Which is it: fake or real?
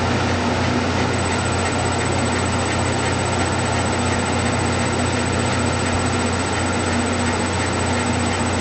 real